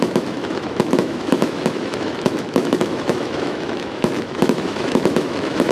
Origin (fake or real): fake